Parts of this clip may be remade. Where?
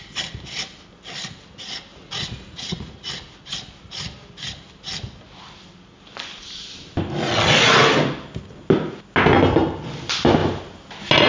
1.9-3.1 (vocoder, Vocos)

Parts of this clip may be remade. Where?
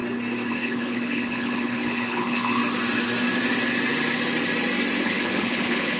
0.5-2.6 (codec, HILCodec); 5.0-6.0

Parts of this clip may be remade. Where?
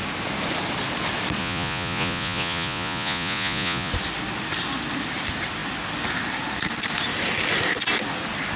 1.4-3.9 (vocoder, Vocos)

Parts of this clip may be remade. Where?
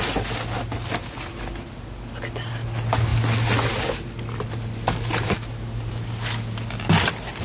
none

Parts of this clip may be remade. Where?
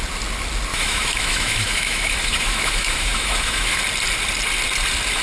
0.7-3.8 (autoencoder, DAC-VAE)